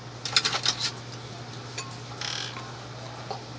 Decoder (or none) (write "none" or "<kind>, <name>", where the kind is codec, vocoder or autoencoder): none